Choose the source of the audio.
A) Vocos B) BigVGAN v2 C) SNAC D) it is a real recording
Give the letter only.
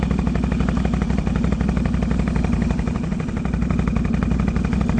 D